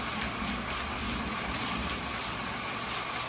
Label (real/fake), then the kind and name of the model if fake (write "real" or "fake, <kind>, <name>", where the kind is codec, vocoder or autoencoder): real